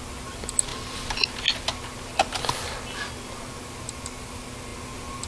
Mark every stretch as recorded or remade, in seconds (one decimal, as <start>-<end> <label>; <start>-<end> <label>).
0.0-5.3 recorded

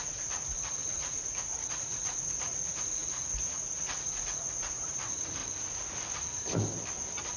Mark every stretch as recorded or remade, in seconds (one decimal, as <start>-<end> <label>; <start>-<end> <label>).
0.0-5.4 remade; 5.4-7.4 recorded

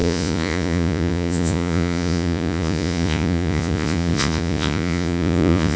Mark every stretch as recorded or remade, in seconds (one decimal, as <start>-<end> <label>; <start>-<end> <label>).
0.0-5.8 remade

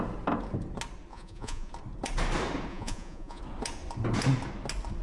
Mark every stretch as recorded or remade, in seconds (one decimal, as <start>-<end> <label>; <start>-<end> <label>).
0.0-1.1 recorded; 1.1-1.7 remade; 1.7-2.7 recorded; 2.7-3.4 remade; 3.4-5.0 recorded

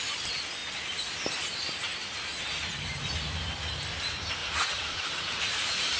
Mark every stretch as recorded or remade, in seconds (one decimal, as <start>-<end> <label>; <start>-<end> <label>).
0.0-4.4 recorded; 4.4-6.0 remade